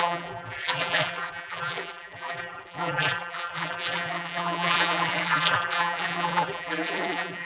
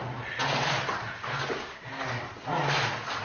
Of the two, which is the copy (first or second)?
first